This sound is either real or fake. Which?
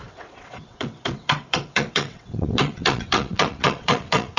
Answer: fake